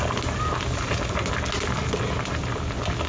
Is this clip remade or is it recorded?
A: recorded